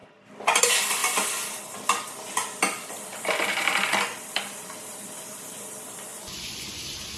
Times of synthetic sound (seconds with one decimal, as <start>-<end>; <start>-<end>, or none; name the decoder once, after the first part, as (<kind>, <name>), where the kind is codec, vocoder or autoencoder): 6.1-6.8 (vocoder, Vocos)